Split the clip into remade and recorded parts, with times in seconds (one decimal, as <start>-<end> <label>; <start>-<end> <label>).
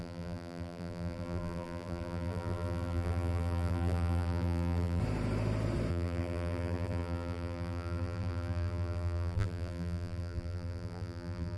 0.0-5.0 remade; 5.0-5.9 recorded; 5.9-11.6 remade